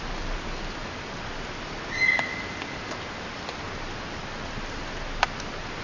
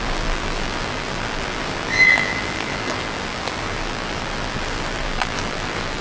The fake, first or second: second